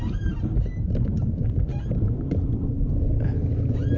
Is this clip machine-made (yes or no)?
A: no